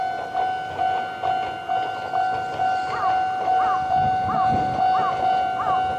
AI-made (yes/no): no